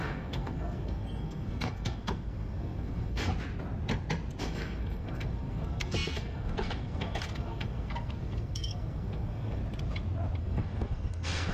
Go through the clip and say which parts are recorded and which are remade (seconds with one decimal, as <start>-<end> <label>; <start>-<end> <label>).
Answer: 0.0-3.3 remade; 3.3-4.4 recorded; 4.4-9.6 remade; 9.6-10.4 recorded; 10.4-11.5 remade